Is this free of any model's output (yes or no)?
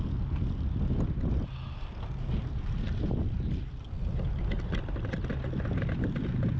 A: yes